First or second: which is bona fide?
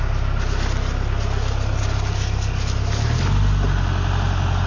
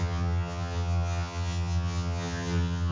first